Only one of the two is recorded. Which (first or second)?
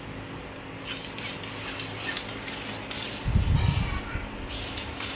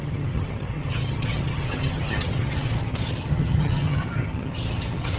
first